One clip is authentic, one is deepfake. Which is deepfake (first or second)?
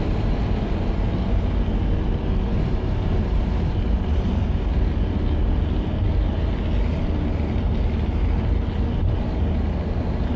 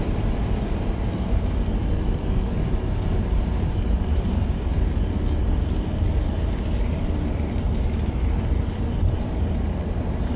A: second